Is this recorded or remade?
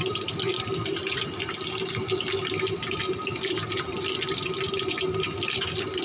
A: remade